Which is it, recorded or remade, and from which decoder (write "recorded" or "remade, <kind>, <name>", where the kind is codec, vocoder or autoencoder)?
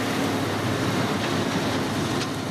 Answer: recorded